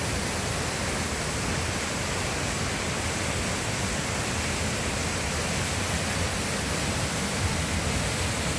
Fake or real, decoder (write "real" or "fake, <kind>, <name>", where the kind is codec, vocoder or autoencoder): real